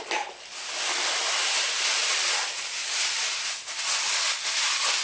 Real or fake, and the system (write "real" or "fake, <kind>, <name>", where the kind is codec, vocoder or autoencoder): real